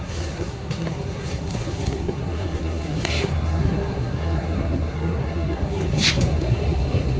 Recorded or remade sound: remade